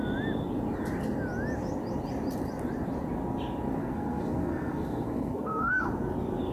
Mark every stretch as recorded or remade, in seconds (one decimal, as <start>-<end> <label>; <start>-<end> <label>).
0.0-3.8 recorded; 3.8-5.9 remade; 5.9-6.5 recorded